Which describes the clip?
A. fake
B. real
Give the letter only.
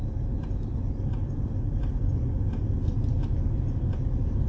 A